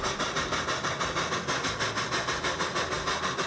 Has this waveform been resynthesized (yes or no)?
no